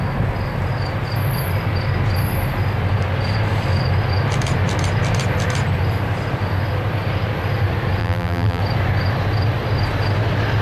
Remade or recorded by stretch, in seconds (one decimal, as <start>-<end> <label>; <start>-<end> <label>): 0.0-8.0 recorded; 8.0-8.6 remade; 8.6-10.6 recorded